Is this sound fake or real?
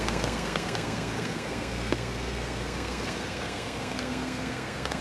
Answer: fake